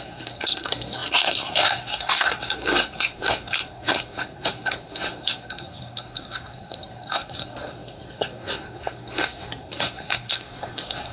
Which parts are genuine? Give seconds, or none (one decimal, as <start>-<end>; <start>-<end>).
none